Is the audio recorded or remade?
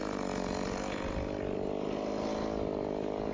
recorded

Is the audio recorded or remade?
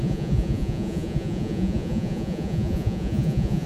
remade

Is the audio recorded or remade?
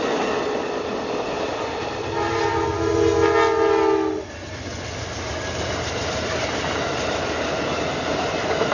recorded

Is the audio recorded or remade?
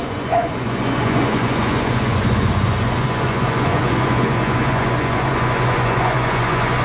remade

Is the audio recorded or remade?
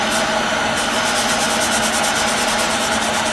recorded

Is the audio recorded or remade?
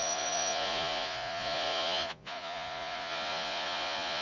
remade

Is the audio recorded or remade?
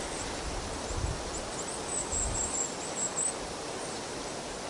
recorded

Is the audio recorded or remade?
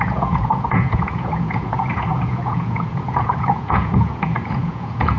remade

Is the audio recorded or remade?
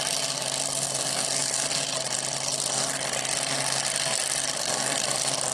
recorded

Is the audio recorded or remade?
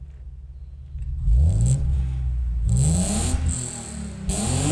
recorded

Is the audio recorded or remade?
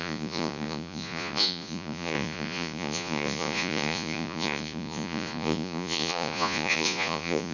remade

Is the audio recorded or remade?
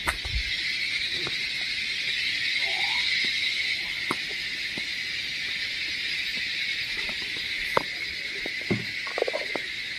recorded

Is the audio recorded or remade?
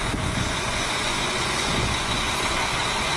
remade